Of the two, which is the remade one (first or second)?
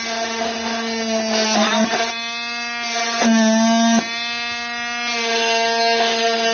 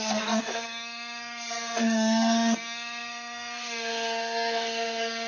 second